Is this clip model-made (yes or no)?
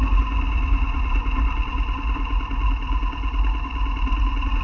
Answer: no